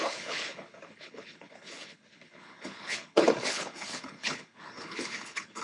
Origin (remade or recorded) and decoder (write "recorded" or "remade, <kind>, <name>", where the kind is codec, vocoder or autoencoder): remade, codec, HILCodec